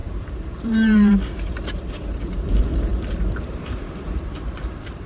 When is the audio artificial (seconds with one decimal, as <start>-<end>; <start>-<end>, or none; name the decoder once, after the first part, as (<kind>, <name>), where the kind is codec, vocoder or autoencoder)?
0.0-2.9 (vocoder, BigVGAN v2); 3.4-5.1